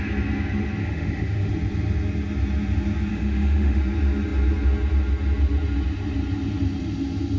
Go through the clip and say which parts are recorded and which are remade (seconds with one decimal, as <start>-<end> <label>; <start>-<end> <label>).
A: 0.0-0.8 recorded; 0.8-1.5 remade; 1.5-3.1 recorded; 3.1-3.8 remade; 3.8-7.4 recorded